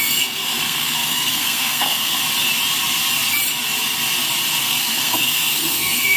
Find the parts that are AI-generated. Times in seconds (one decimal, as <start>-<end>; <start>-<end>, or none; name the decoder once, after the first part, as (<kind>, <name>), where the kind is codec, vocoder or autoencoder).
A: 0.0-2.2 (codec, SNAC); 4.6-6.2